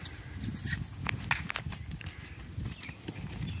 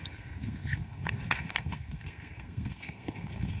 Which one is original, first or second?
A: first